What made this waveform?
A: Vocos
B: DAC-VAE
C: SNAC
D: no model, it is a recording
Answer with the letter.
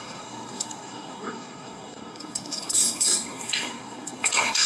C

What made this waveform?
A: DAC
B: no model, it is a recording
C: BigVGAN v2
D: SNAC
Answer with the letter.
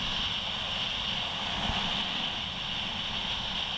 B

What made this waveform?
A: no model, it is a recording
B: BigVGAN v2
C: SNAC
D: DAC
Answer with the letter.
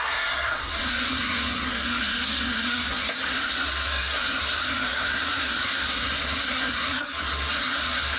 C